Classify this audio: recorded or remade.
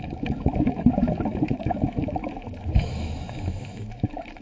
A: remade